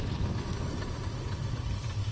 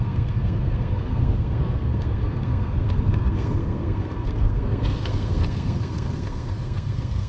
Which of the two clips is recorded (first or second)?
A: first